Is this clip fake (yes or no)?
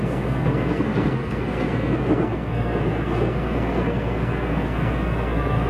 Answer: yes